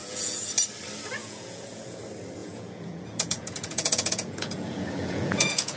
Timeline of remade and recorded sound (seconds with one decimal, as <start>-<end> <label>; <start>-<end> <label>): 0.0-0.5 remade; 0.5-1.2 recorded; 1.2-2.0 remade; 2.0-2.4 recorded; 2.4-5.8 remade